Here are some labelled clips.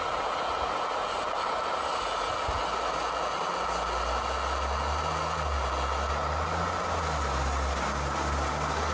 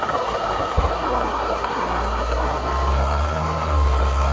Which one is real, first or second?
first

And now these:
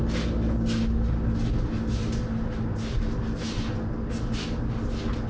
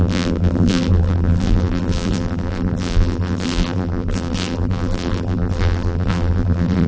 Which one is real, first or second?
first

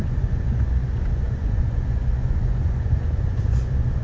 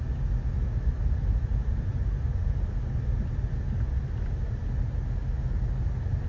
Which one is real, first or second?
second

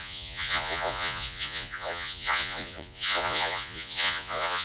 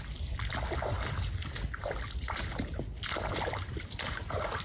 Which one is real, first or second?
second